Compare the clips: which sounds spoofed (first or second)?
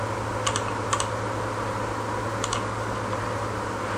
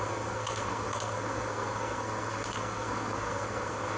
second